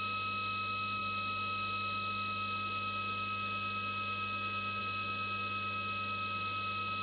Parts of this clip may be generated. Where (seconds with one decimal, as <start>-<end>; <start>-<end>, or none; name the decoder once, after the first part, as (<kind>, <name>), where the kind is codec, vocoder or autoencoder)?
none